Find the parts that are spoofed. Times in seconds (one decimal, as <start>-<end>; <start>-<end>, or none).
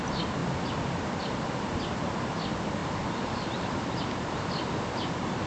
2.8-3.7